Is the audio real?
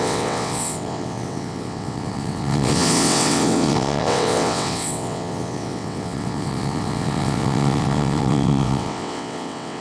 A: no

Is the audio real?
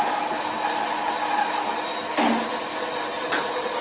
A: yes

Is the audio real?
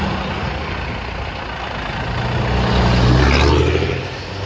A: yes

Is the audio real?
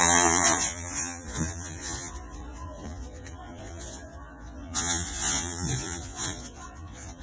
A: no